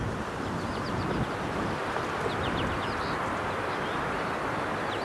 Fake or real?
real